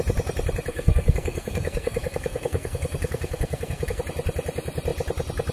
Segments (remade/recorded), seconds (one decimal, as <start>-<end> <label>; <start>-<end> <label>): 0.0-0.7 recorded; 0.7-4.0 remade; 4.0-5.5 recorded